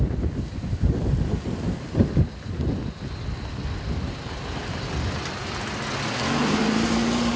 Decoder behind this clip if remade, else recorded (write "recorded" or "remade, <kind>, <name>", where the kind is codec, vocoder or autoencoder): recorded